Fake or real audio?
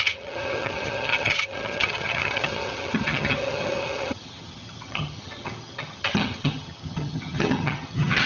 fake